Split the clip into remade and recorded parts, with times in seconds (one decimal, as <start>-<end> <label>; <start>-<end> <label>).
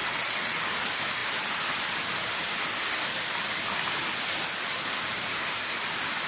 0.0-0.6 remade; 0.6-6.3 recorded